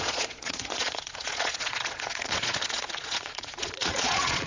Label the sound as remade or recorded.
remade